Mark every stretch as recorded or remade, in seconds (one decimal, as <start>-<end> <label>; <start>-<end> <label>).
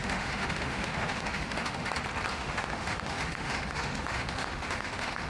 0.0-1.9 remade; 1.9-2.3 recorded; 2.3-5.3 remade